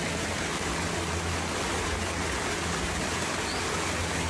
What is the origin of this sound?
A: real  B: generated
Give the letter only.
A